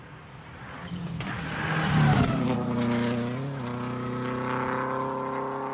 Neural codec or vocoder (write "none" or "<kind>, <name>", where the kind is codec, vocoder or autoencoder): none